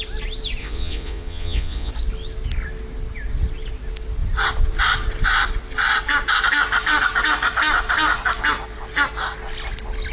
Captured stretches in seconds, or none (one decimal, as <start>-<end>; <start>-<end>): 0.0-0.6; 1.9-10.1